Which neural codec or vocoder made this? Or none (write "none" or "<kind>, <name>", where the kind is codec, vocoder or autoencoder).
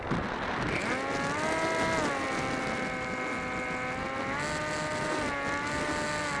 none